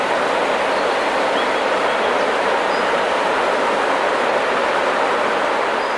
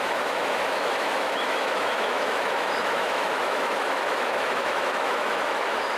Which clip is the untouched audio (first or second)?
first